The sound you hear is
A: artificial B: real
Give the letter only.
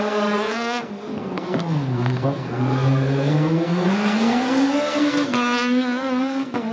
A